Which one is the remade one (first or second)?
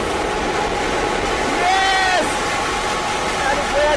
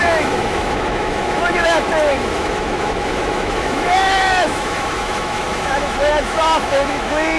second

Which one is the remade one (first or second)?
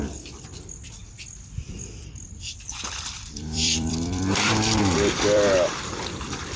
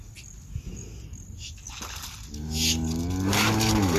first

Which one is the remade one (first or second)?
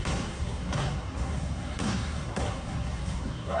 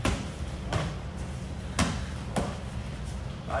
first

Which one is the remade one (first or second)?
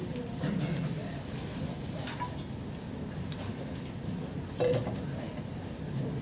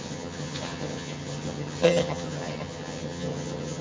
second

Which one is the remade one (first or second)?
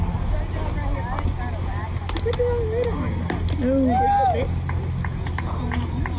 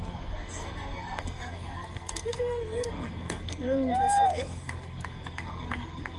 second